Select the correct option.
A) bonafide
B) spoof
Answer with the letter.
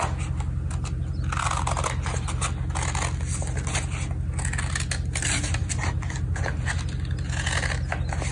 A